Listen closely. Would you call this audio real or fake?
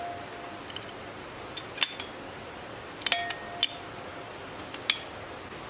real